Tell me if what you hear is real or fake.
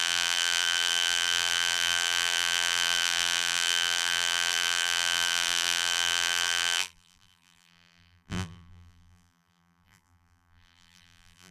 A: fake